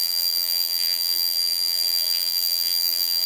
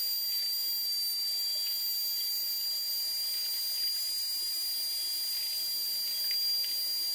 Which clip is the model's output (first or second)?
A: first